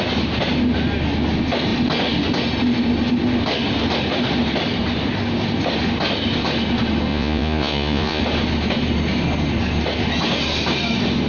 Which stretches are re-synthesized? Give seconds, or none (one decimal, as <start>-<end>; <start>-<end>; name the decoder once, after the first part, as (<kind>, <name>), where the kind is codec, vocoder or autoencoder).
7.1-8.2 (vocoder, Vocos)